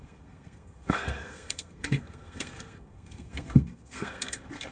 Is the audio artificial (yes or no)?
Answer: yes